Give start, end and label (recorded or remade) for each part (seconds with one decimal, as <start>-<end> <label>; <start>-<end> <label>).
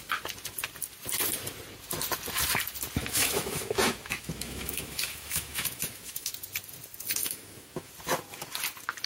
0.0-3.0 recorded; 3.0-6.3 remade; 6.3-7.2 recorded; 7.2-7.9 remade; 7.9-9.1 recorded